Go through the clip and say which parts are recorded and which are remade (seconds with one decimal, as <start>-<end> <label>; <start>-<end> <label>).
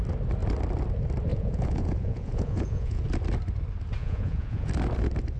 0.0-1.3 recorded; 1.3-3.0 remade; 3.0-4.0 recorded; 4.0-4.7 remade; 4.7-5.4 recorded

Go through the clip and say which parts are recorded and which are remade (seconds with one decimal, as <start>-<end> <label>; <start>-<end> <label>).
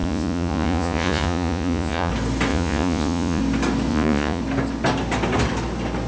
0.0-2.1 remade; 2.1-2.5 recorded; 2.5-3.4 remade; 3.4-3.9 recorded; 3.9-4.4 remade; 4.4-6.1 recorded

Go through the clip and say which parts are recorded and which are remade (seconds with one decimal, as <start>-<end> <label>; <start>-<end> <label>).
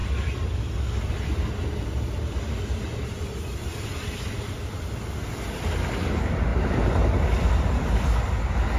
0.0-8.8 recorded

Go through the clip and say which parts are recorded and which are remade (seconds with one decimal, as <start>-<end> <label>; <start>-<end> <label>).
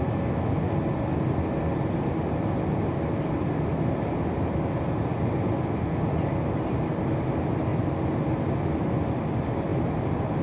0.0-10.4 recorded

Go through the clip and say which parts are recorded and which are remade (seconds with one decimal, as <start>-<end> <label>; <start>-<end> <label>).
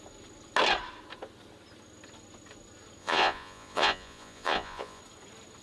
0.0-3.0 recorded; 3.0-5.0 remade; 5.0-5.6 recorded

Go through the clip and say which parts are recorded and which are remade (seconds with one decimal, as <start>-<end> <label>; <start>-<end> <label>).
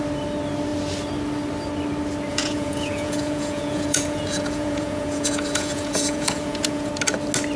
0.0-2.3 recorded; 2.3-6.9 remade; 6.9-7.6 recorded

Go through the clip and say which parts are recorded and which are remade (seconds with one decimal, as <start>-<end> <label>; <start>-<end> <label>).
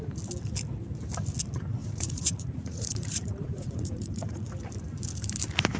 0.0-1.8 recorded; 1.8-4.5 remade; 4.5-5.8 recorded